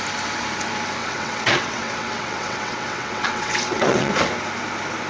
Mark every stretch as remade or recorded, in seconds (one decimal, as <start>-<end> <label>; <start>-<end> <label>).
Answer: 0.0-1.0 recorded; 1.0-4.1 remade; 4.1-5.1 recorded